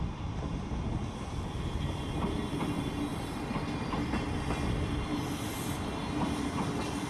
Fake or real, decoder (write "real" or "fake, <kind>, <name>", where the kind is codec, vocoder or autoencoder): real